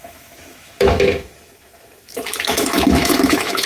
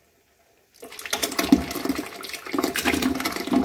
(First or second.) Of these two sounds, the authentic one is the second